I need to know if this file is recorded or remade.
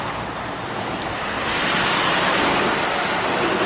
recorded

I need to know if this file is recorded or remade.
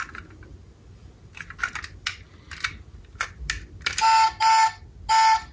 recorded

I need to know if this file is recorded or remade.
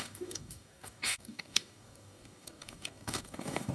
remade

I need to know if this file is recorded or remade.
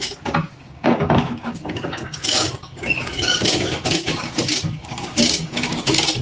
remade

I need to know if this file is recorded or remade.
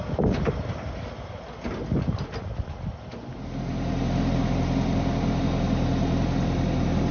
recorded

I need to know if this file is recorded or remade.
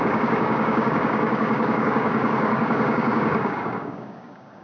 remade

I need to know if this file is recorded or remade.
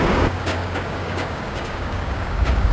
remade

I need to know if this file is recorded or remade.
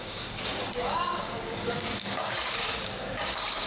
remade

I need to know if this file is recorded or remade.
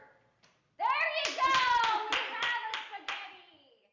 recorded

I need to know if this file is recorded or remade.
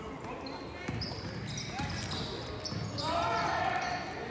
recorded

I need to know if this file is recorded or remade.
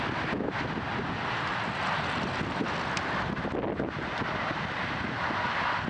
recorded